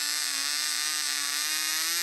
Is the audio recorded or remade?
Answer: recorded